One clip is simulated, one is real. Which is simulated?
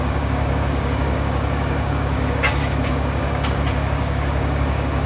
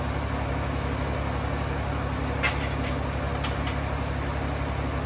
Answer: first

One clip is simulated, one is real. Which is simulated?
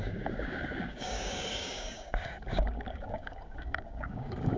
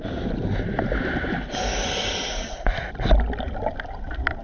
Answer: first